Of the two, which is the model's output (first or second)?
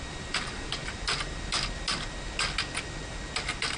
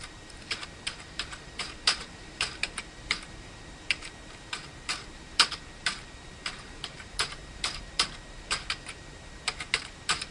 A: second